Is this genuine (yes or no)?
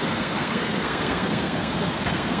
no